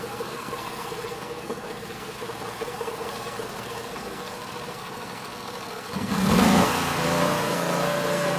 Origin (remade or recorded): remade